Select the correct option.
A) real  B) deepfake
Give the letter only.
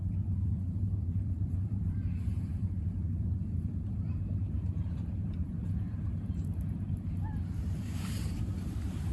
B